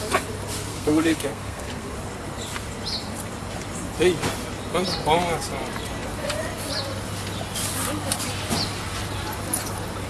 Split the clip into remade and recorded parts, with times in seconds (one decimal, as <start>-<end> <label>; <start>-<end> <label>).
0.0-0.7 recorded; 0.7-1.9 remade; 1.9-10.1 recorded